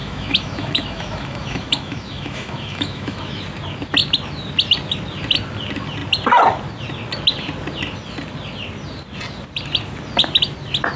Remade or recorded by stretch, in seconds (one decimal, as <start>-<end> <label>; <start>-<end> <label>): 0.0-3.4 remade; 3.4-11.0 recorded